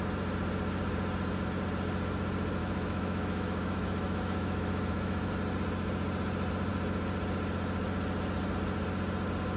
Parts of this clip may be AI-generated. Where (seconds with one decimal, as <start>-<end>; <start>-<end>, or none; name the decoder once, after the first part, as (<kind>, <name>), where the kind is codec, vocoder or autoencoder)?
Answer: 2.6-5.3 (autoencoder, DAC-VAE)